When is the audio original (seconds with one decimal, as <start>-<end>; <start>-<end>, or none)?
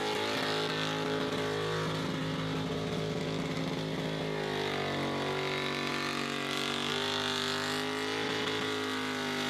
0.0-9.5